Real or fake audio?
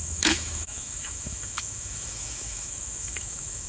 fake